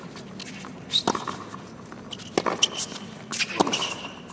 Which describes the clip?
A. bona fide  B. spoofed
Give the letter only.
A